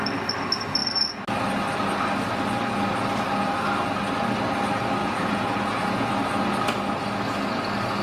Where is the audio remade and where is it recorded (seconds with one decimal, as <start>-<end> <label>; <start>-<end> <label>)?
0.0-5.0 recorded; 5.0-6.1 remade; 6.1-8.0 recorded